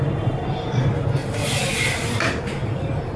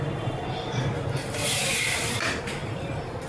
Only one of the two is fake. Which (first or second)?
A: second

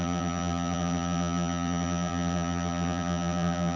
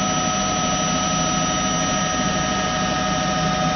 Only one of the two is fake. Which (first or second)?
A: first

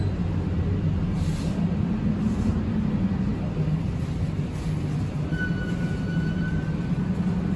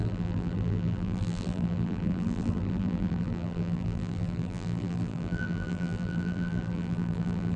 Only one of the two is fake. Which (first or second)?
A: second